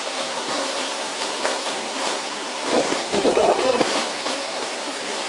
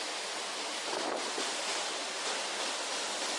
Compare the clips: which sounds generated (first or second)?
first